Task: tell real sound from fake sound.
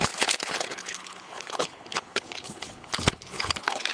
fake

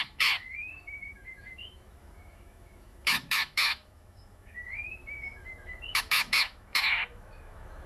fake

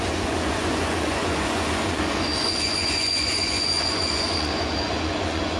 fake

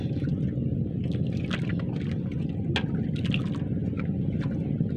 real